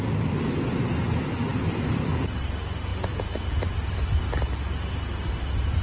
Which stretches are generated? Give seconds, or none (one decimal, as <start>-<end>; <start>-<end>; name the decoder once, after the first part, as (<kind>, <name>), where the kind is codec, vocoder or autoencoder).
none